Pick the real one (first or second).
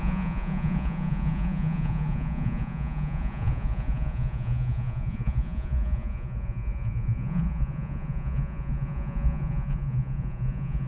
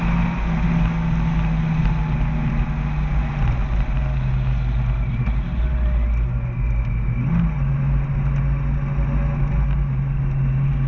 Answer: second